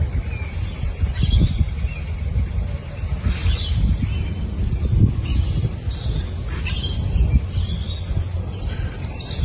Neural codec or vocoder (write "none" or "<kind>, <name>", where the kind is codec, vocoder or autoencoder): none